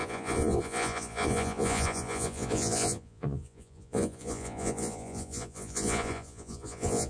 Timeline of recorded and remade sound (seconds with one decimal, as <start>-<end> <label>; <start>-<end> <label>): 0.0-7.1 remade